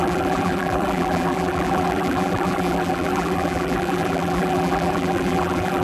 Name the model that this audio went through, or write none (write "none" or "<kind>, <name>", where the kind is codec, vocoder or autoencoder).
vocoder, BigVGAN v2